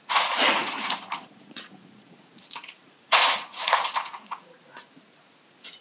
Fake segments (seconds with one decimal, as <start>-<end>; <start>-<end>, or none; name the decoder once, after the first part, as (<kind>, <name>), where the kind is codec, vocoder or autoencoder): 0.0-5.8 (vocoder, Vocos)